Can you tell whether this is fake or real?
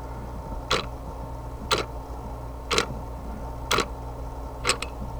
real